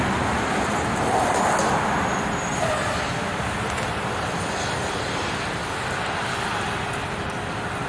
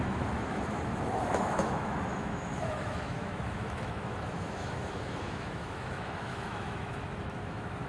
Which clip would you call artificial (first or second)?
second